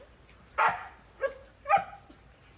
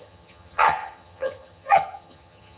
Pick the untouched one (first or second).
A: first